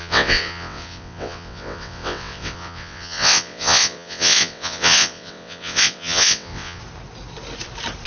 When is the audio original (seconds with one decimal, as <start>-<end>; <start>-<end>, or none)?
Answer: 6.8-8.1